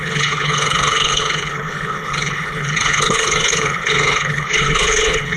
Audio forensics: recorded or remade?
remade